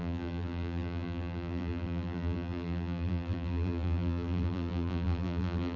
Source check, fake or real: fake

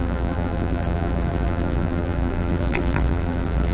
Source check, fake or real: fake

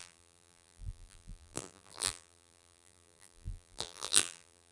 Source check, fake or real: fake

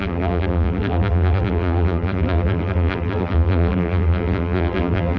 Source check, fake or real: fake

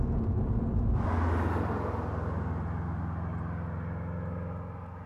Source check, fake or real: real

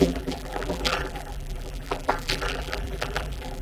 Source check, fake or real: fake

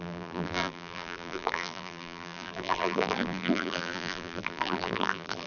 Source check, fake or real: fake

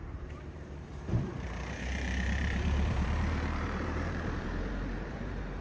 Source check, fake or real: fake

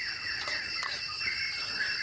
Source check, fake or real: fake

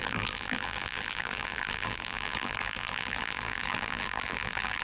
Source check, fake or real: fake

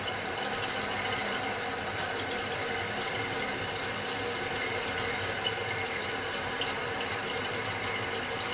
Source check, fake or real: fake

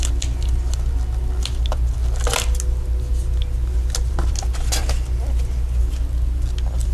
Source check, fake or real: real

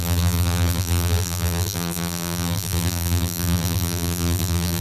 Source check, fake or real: fake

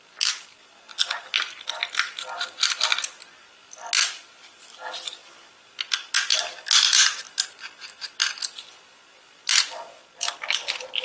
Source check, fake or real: real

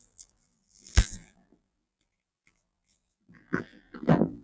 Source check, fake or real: fake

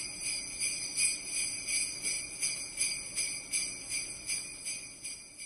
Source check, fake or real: real